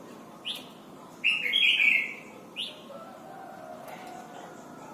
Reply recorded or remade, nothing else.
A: recorded